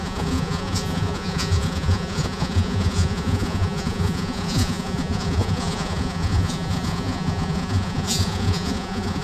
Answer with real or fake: fake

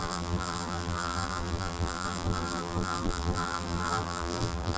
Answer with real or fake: fake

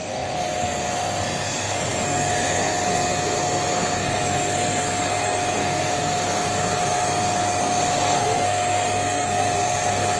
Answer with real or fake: fake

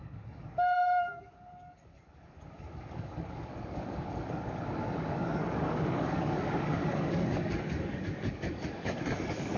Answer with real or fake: fake